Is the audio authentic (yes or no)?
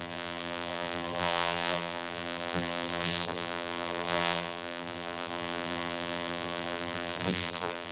no